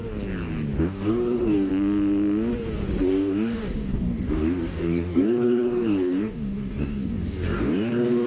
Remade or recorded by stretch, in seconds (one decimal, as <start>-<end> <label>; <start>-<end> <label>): 0.0-0.8 recorded; 0.8-1.7 remade; 1.7-3.0 recorded; 3.0-8.3 remade